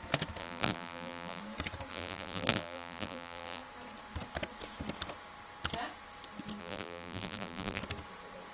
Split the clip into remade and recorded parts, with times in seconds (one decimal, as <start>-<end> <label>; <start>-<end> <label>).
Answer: 0.0-0.4 recorded; 0.4-1.4 remade; 1.4-1.9 recorded; 1.9-3.6 remade; 3.6-6.6 recorded; 6.6-7.8 remade; 7.8-8.5 recorded